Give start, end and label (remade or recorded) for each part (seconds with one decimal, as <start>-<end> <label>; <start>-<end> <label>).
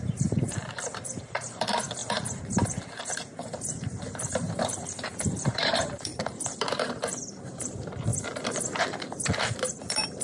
0.0-8.1 remade; 8.1-8.8 recorded; 8.8-10.2 remade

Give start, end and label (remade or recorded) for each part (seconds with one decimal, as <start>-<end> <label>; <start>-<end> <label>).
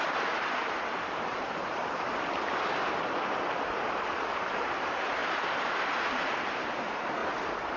0.0-1.8 remade; 1.8-4.5 recorded; 4.5-7.2 remade; 7.2-7.8 recorded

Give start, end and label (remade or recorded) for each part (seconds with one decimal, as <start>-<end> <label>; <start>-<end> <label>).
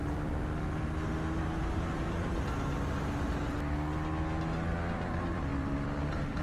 0.0-0.7 remade; 0.7-1.6 recorded; 1.6-2.4 remade; 2.4-5.5 recorded; 5.5-6.4 remade